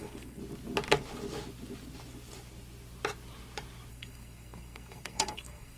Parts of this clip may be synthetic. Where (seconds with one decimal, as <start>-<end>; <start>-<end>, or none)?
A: 0.0-0.4; 3.9-5.8